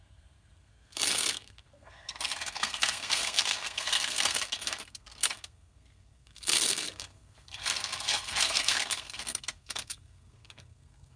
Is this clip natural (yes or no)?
no